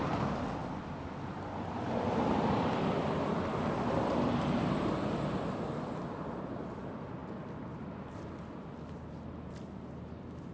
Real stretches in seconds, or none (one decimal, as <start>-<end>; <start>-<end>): 0.0-10.5